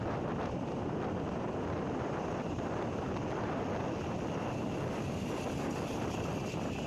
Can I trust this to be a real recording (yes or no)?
yes